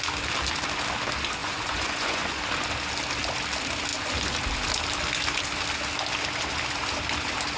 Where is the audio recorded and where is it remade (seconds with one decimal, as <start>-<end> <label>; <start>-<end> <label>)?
0.0-1.4 recorded; 1.4-2.4 remade; 2.4-7.6 recorded

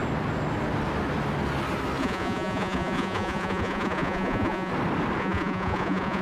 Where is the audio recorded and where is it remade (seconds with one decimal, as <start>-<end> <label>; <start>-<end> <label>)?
0.0-2.0 recorded; 2.0-4.7 remade; 4.7-5.2 recorded; 5.2-6.2 remade

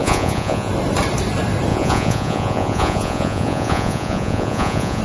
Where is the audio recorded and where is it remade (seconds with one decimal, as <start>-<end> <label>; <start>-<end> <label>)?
0.0-0.7 remade; 0.7-1.7 recorded; 1.7-5.0 remade

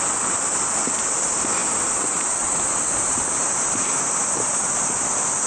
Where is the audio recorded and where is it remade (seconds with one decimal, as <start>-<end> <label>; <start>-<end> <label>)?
0.0-5.5 recorded

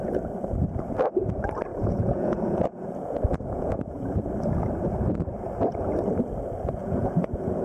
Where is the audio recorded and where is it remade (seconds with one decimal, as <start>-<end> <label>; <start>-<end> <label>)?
0.0-1.7 recorded; 1.7-4.3 remade; 4.3-6.8 recorded; 6.8-7.6 remade

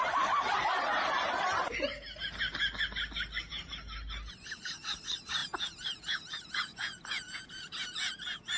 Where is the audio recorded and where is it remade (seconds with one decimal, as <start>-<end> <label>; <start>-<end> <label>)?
0.0-5.4 recorded; 5.4-8.6 remade

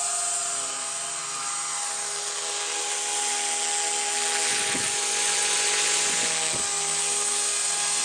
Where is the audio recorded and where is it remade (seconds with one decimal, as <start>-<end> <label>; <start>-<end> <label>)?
0.0-4.5 recorded; 4.5-6.3 remade; 6.3-8.0 recorded